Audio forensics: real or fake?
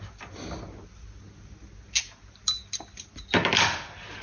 real